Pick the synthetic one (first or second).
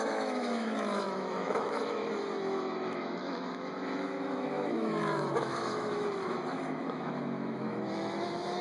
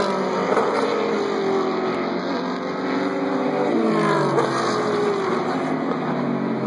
first